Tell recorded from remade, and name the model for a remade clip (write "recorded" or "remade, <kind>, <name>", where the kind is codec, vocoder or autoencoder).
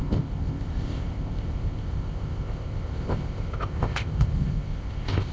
remade, codec, ZipCodec